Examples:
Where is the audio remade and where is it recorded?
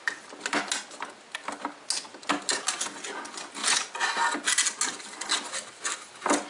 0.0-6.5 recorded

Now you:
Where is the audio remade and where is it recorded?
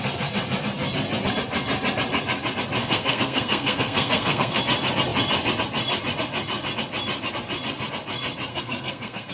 0.0-2.8 recorded; 2.8-4.6 remade; 4.6-8.5 recorded; 8.5-9.3 remade